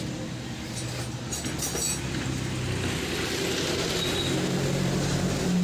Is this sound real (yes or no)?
yes